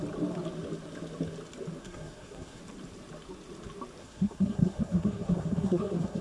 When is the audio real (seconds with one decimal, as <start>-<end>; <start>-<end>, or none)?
0.0-1.8; 2.6-4.0